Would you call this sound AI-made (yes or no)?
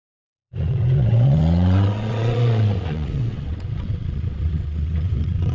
yes